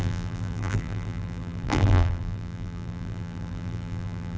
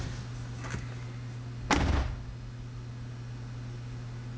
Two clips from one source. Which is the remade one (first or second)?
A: first